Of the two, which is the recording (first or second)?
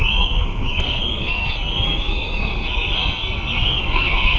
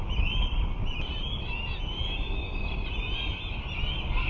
second